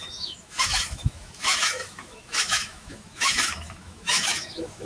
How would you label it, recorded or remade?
remade